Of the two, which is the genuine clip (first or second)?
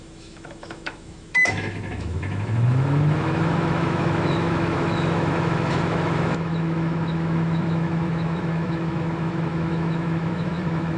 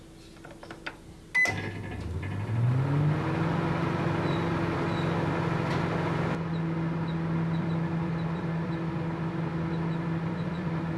second